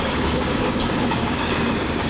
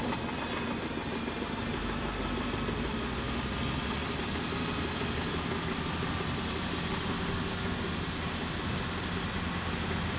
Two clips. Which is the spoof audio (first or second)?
first